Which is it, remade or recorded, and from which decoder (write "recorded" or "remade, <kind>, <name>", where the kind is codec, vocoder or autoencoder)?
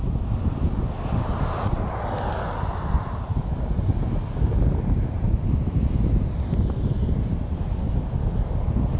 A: recorded